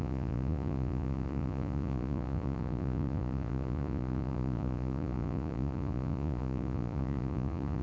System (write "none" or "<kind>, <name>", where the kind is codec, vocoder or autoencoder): vocoder, Vocos